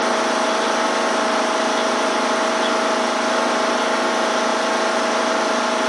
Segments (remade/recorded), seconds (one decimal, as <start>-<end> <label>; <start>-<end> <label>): 0.0-5.9 recorded